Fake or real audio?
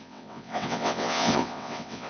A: fake